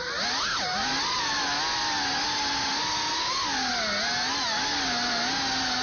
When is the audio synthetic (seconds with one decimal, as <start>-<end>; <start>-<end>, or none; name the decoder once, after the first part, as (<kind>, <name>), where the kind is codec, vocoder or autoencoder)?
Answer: none